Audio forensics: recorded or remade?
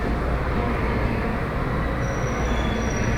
recorded